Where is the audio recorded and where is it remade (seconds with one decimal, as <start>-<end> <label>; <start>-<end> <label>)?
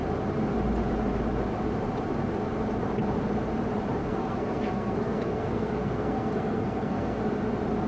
0.0-4.0 recorded; 4.0-7.2 remade; 7.2-7.9 recorded